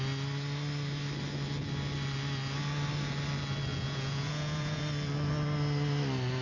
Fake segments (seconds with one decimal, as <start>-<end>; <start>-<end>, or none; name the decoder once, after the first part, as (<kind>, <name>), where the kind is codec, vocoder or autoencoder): 3.7-4.8 (vocoder, Vocos)

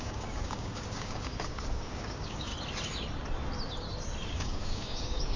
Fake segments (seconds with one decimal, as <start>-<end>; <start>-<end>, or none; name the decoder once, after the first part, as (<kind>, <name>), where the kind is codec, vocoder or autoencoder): 0.0-2.5 (codec, DAC); 4.3-5.4

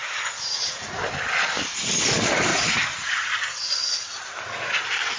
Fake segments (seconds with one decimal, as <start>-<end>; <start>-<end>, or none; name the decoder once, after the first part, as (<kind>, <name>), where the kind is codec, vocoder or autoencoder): 0.0-1.0 (vocoder, Vocos); 2.5-3.3

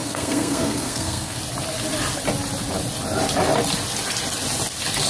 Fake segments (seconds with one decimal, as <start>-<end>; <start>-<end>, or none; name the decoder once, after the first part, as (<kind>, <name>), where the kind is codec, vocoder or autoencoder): 0.0-1.4 (codec, SNAC)